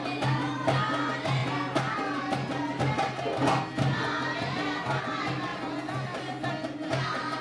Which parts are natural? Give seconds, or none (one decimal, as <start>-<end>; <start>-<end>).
0.0-7.4